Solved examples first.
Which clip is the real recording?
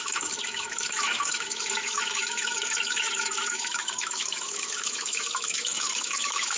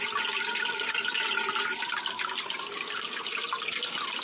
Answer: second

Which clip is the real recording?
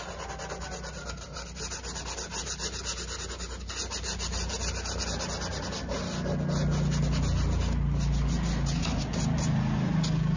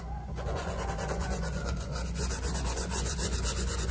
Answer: first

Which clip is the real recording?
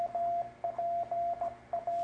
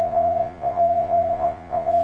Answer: first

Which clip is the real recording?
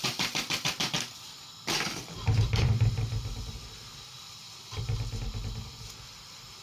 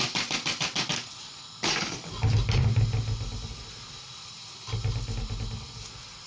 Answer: second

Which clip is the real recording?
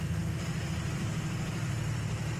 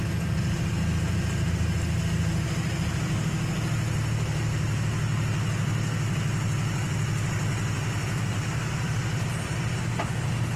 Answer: second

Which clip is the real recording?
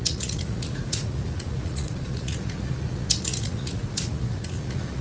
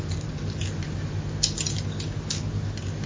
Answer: second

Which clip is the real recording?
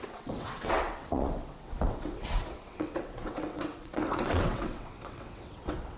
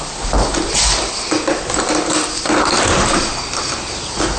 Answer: second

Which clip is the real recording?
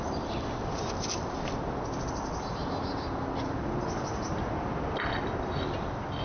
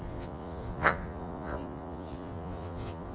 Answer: first